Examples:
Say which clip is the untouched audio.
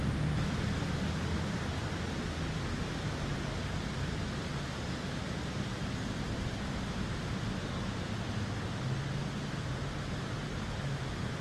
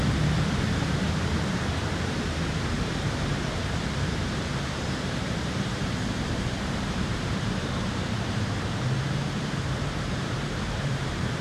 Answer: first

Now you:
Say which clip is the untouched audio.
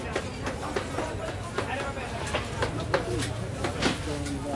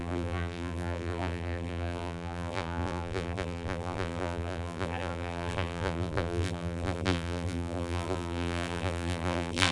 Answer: first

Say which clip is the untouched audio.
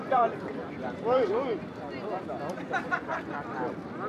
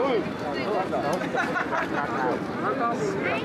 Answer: second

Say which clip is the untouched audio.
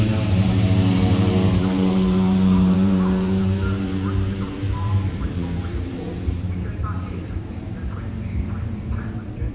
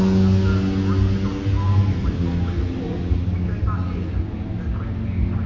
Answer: second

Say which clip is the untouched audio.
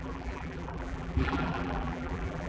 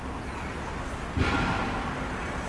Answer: second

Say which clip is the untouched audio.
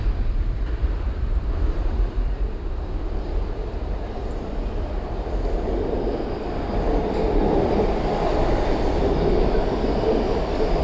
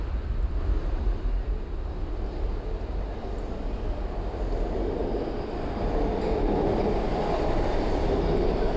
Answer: second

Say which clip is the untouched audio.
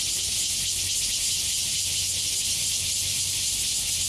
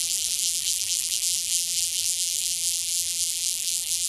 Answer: first